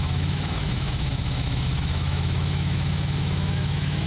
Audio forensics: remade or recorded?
remade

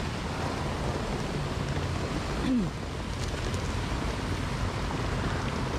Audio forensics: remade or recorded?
recorded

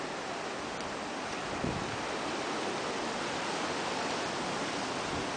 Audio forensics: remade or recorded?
recorded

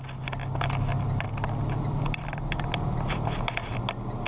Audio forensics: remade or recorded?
recorded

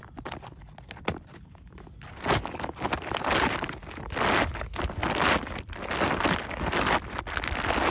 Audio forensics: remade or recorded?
recorded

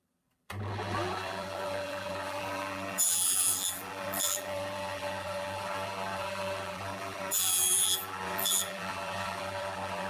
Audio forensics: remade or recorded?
remade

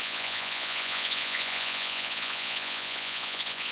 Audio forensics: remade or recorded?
remade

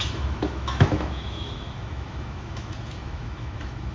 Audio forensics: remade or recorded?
remade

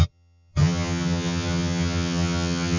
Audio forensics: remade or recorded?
remade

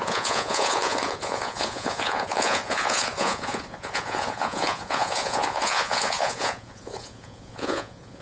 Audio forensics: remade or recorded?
remade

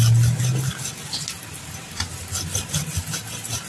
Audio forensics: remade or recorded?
recorded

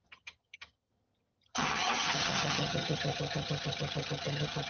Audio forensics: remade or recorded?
remade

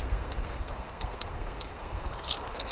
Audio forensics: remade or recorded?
remade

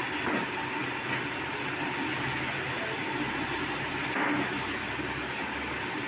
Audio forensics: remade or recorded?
recorded